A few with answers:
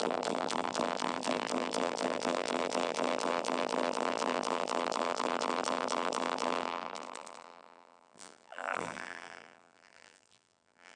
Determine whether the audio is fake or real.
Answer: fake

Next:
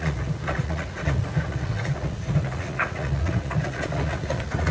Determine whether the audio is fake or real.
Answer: fake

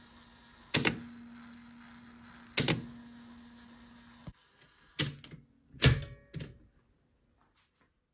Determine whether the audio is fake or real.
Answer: real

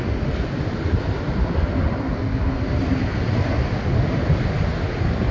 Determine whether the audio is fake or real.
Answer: real